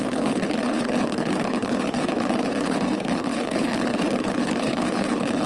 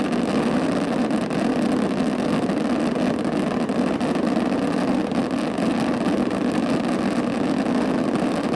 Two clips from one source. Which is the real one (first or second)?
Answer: second